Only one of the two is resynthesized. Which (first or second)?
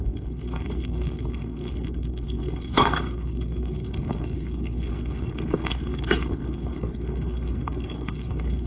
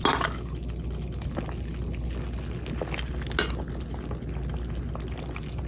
first